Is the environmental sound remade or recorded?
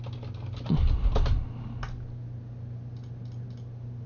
recorded